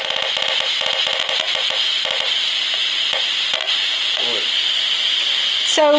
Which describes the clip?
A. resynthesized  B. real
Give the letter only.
B